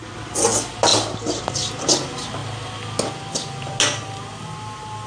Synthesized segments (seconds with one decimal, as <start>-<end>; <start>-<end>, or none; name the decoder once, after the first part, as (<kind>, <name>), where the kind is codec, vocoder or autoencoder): none